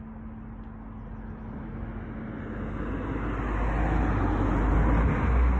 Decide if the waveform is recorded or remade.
recorded